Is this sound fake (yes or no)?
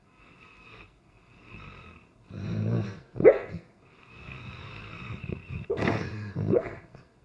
yes